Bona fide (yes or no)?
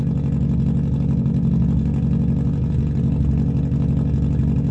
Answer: yes